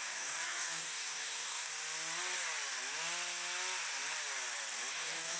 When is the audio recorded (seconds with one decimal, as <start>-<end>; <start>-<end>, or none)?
1.7-4.9